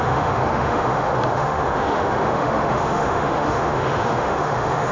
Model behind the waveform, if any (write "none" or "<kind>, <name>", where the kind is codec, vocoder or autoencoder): autoencoder, DAC-VAE